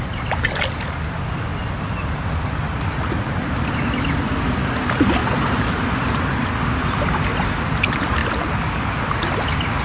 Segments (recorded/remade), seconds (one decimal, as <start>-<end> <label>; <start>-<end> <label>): 0.0-1.5 recorded; 1.5-4.0 remade; 4.0-8.2 recorded; 8.2-8.8 remade; 8.8-9.8 recorded